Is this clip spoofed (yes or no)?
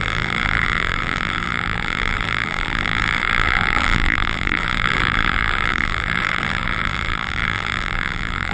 yes